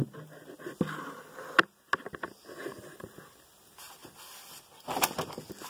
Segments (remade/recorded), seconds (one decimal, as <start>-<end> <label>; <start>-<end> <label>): 0.0-5.7 recorded